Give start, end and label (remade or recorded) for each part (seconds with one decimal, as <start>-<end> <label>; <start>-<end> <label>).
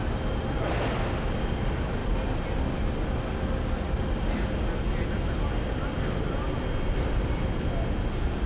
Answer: 0.0-8.5 recorded